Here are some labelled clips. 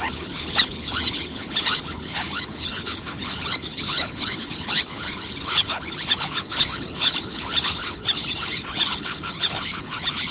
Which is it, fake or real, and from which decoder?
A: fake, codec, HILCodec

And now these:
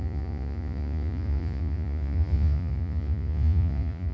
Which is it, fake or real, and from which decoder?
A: fake, vocoder, Vocos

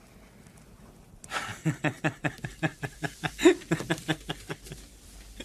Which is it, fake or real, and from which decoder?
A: real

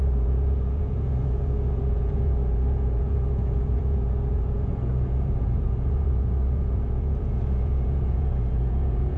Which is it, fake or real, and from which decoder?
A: fake, vocoder, Vocos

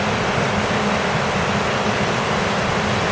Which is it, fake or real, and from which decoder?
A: real